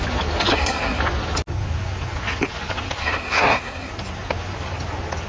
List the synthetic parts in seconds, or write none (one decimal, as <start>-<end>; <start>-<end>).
0.5-1.0; 3.0-3.9